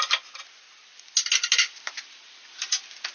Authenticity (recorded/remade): recorded